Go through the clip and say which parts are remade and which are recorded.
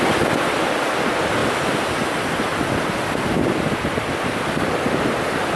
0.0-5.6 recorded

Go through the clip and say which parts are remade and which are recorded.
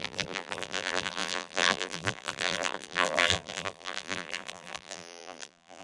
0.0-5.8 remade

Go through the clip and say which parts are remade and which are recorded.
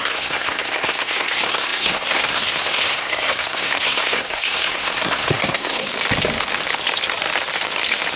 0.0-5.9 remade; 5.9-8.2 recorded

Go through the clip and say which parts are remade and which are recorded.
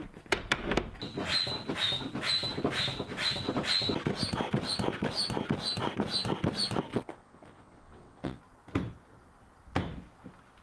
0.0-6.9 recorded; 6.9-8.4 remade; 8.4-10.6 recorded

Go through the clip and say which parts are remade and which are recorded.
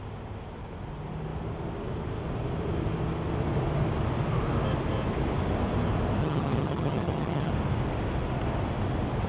0.0-6.2 recorded; 6.2-7.5 remade; 7.5-9.3 recorded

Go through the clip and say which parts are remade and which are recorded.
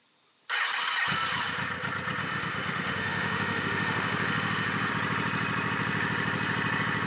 0.0-2.2 recorded; 2.2-4.9 remade; 4.9-7.1 recorded